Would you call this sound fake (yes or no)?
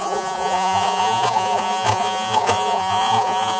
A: yes